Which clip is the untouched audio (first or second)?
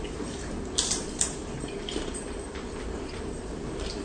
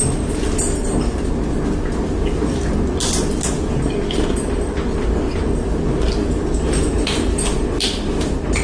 second